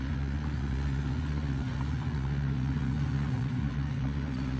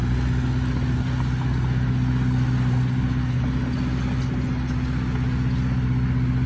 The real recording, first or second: second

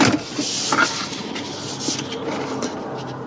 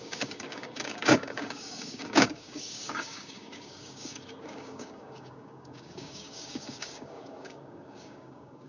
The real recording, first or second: first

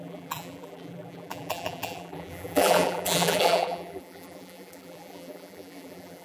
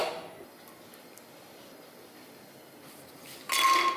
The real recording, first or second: second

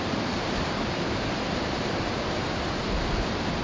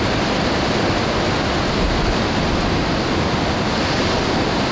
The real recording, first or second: second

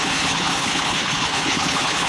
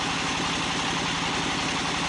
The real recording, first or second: second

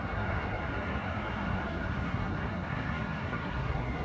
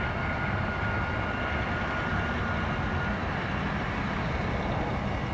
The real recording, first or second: second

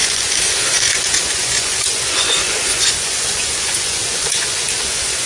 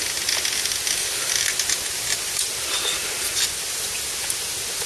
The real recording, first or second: second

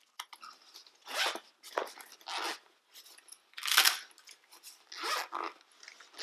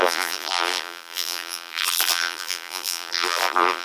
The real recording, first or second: first